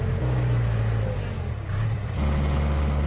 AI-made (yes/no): no